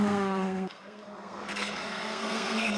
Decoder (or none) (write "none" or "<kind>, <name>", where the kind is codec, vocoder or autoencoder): codec, SNAC